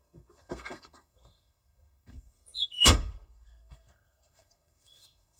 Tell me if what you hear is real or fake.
fake